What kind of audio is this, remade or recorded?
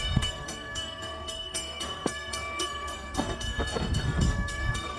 remade